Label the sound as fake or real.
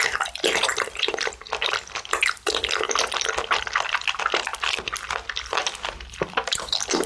real